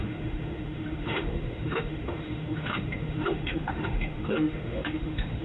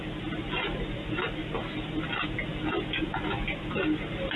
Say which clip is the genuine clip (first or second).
second